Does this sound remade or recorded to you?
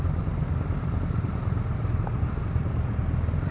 recorded